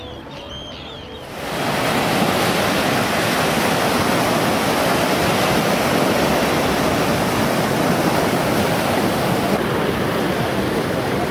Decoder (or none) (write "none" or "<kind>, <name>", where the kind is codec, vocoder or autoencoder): none